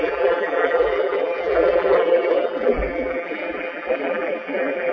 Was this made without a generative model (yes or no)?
no